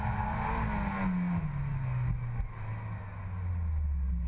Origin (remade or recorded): recorded